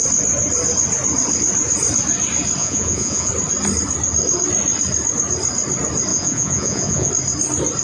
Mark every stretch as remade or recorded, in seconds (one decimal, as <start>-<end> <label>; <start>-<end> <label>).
0.0-2.6 recorded; 2.6-3.3 remade; 3.3-6.1 recorded; 6.1-7.1 remade; 7.1-7.8 recorded